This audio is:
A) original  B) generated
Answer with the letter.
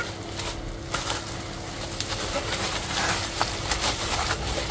A